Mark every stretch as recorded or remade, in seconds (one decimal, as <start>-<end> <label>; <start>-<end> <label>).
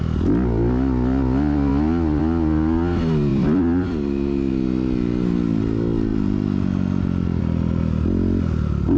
0.0-3.3 recorded; 3.3-4.5 remade; 4.5-9.0 recorded